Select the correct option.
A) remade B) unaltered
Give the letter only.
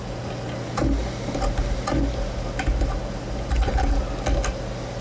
B